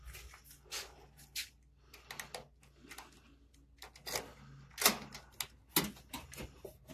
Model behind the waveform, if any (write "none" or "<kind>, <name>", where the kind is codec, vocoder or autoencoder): none